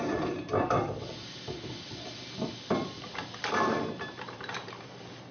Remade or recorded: remade